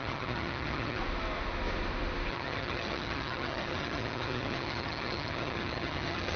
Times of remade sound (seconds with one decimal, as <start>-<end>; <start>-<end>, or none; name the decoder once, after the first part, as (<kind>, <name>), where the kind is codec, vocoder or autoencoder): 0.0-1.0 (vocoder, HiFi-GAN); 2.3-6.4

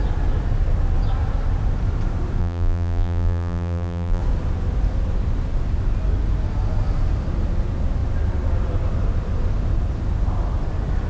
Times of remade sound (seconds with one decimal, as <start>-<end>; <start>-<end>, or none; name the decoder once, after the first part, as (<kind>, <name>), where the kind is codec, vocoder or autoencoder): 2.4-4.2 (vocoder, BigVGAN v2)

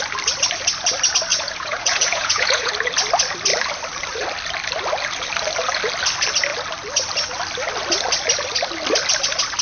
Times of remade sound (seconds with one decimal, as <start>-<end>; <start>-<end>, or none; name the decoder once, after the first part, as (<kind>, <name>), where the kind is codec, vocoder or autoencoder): 1.3-2.7 (vocoder, Vocos)

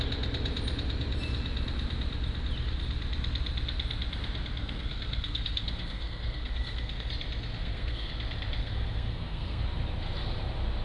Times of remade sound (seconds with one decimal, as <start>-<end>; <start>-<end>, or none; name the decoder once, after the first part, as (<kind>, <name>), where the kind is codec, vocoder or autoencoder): 4.6-7.1 (codec, SNAC); 7.6-8.1; 8.6-9.6

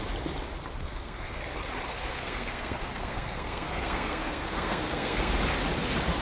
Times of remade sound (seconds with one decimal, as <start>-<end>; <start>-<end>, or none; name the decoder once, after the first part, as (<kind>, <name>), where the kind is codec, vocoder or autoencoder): 0.8-1.4 (codec, SNAC); 1.9-5.3